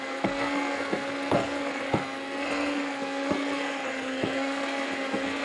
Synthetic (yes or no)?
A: yes